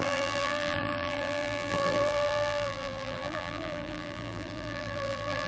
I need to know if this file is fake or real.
fake